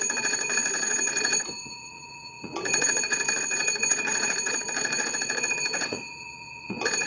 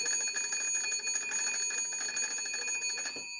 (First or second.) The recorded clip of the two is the second